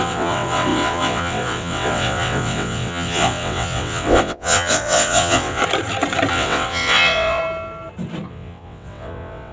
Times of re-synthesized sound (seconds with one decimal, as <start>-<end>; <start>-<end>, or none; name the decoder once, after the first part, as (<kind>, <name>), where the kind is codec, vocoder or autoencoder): 0.0-5.6 (vocoder, WaveNeXt); 6.3-7.4; 8.3-9.5